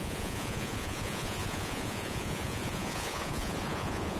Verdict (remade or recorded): remade